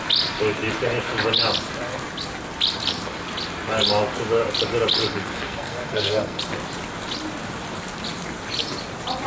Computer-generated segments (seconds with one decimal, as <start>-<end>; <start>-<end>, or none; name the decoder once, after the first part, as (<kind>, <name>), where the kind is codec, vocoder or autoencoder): 5.1-6.4 (codec, SNAC)